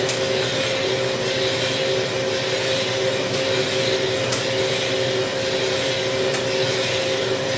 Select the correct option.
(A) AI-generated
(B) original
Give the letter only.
B